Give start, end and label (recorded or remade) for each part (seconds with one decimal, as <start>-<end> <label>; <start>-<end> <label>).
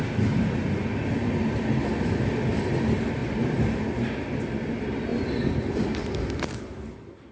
0.0-7.3 recorded